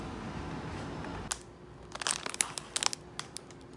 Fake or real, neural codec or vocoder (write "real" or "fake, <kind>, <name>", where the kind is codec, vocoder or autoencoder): real